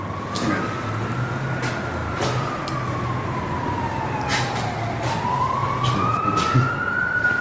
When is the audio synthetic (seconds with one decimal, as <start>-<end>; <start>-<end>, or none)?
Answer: none